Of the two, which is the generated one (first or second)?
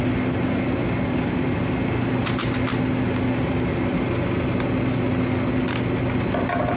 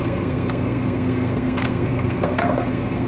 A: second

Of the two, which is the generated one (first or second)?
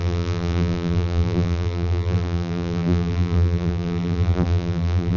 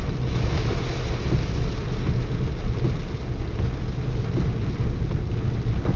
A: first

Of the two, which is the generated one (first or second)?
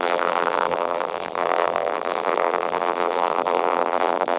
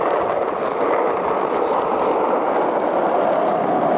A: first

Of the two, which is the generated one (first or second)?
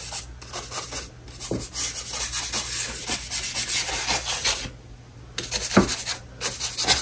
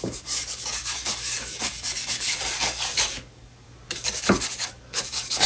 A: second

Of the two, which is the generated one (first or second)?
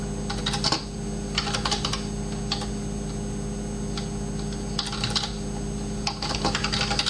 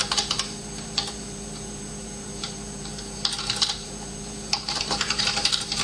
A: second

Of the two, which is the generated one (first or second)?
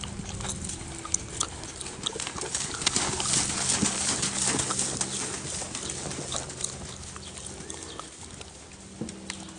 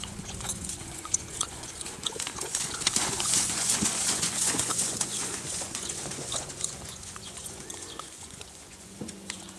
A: second